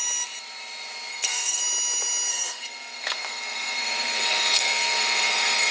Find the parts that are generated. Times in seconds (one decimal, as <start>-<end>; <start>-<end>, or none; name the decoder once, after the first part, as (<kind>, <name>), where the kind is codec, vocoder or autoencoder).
1.1-1.6 (codec, SNAC); 2.3-5.7